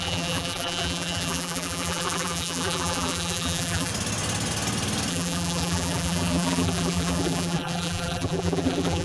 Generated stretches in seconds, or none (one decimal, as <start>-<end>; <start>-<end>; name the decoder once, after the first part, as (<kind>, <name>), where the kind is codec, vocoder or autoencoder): 0.0-3.9 (vocoder, BigVGAN v2); 5.1-9.0